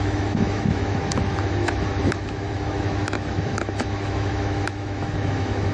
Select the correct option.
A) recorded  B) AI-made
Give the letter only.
B